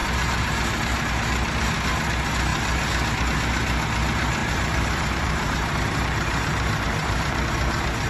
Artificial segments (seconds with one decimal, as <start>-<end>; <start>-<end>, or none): 0.0-1.1; 4.4-7.4